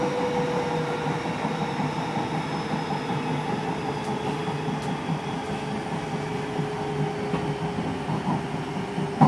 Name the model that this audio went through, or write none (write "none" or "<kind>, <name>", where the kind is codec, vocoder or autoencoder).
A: none